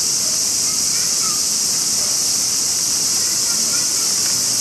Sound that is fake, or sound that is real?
real